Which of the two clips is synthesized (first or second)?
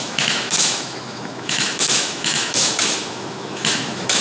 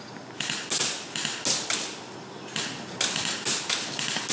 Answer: first